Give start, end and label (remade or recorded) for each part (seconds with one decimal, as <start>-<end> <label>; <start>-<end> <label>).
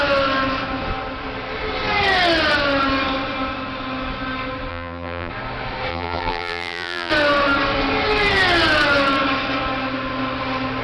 0.0-4.7 recorded; 4.7-5.3 remade; 5.3-5.9 recorded; 5.9-7.1 remade; 7.1-10.8 recorded